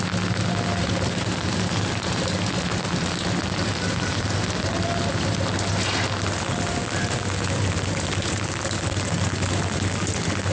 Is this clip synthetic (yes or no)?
no